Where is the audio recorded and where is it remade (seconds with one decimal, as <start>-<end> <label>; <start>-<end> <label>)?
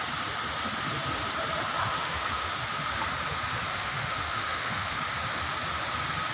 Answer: 0.0-1.8 recorded; 1.8-2.5 remade; 2.5-3.7 recorded; 3.7-5.0 remade; 5.0-6.3 recorded